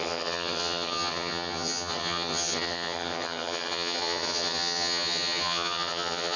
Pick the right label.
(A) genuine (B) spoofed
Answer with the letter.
B